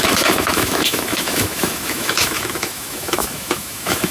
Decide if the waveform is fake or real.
fake